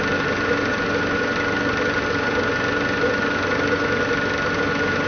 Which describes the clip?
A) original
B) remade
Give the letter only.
A